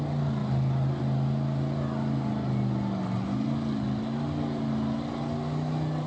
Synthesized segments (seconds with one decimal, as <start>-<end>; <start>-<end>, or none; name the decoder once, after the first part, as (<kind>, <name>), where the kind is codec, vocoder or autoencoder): none